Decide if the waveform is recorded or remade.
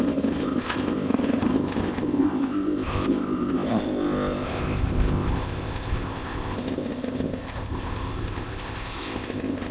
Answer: remade